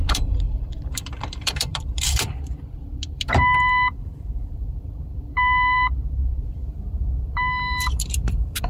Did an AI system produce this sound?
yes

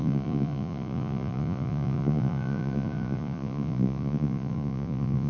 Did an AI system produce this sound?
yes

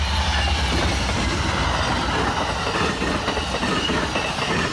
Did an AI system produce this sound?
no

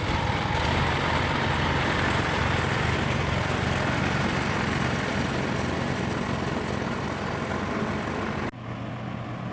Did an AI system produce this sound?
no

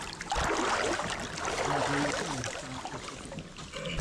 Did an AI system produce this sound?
no